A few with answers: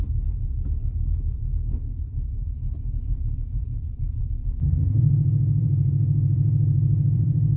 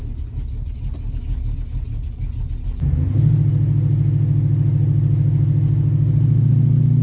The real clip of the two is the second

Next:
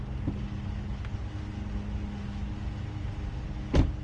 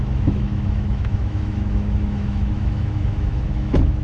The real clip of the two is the first